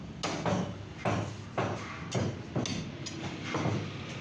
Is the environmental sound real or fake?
real